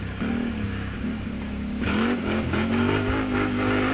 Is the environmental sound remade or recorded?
remade